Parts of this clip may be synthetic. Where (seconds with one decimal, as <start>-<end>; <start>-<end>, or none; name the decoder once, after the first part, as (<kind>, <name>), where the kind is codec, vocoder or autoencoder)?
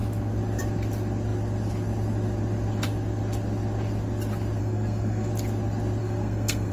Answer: 4.6-5.3 (codec, SNAC); 6.0-6.7